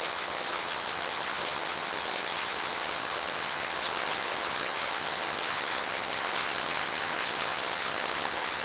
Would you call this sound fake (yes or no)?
yes